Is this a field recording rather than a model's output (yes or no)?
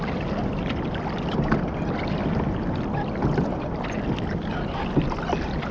yes